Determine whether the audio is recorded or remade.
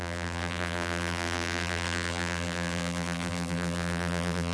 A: remade